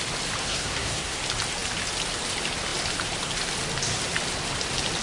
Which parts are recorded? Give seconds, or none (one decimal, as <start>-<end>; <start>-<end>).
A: 0.0-0.4; 1.2-5.0